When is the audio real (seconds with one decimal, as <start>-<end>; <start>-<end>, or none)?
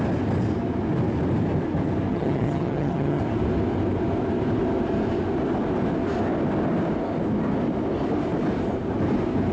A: 0.0-2.1; 3.2-9.5